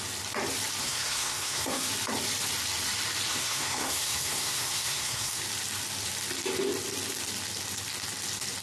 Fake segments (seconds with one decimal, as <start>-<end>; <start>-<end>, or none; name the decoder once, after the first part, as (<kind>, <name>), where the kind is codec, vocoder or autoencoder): 0.8-1.9 (codec, SNAC); 3.3-5.4